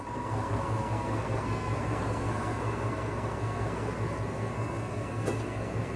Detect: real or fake fake